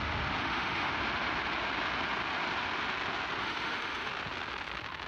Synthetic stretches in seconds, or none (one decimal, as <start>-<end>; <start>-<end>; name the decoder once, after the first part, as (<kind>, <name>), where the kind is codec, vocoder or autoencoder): 0.4-0.9 (autoencoder, DAC-VAE); 3.4-4.1

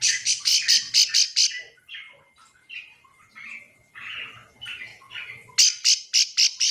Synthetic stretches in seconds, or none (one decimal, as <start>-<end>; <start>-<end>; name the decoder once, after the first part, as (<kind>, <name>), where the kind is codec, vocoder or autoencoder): none

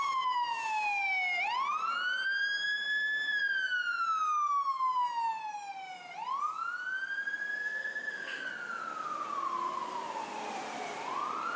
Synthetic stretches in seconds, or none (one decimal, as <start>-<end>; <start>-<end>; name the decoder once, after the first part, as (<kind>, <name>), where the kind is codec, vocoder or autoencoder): 7.6-8.5 (autoencoder, DAC-VAE)